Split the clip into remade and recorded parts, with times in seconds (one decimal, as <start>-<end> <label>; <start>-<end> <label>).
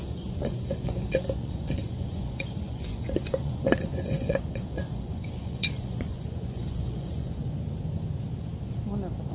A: 0.0-7.4 remade; 7.4-9.3 recorded